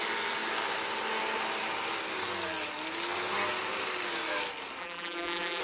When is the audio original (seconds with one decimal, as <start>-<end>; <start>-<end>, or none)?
0.0-4.8